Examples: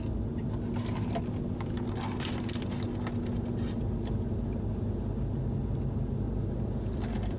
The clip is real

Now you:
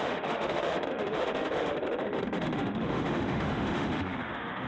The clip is fake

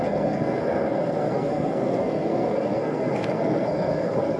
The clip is fake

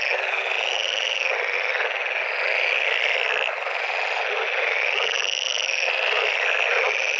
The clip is real